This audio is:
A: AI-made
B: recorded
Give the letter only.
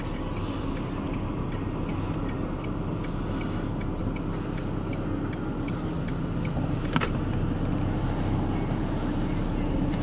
B